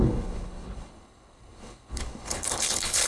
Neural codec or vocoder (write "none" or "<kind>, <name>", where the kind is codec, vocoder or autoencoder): codec, HILCodec